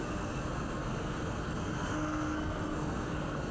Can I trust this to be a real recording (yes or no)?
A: no